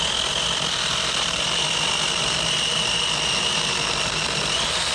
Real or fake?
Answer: real